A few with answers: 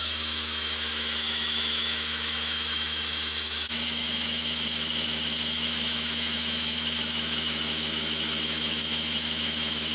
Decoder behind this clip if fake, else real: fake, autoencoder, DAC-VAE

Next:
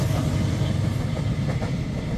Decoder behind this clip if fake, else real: real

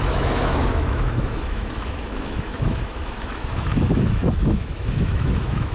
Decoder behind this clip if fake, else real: fake, autoencoder, DAC-VAE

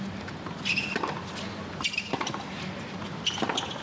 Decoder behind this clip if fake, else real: real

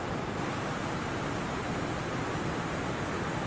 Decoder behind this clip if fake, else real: real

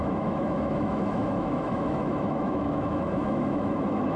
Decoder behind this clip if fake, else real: fake, autoencoder, DAC-VAE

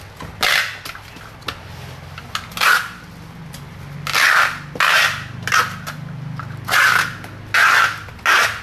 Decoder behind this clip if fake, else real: real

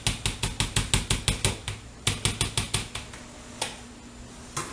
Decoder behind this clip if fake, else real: real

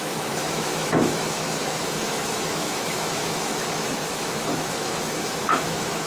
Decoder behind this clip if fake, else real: fake, autoencoder, DAC-VAE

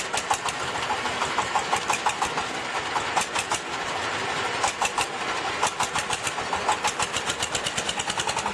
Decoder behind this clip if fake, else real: real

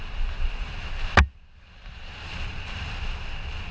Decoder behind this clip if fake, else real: real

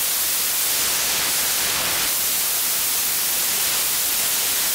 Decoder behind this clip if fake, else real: real